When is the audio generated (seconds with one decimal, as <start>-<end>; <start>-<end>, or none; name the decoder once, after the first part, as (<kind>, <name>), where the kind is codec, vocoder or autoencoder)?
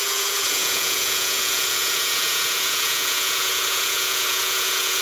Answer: 0.0-5.0 (vocoder, Vocos)